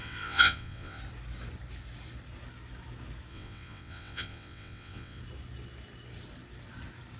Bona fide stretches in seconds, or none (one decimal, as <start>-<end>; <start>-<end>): 1.0-3.3; 5.2-7.2

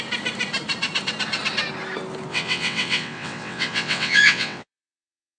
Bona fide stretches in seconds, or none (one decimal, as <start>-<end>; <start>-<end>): 0.0-2.3

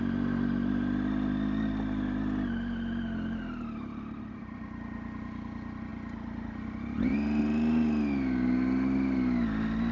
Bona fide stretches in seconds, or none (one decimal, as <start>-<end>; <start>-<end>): 0.0-9.9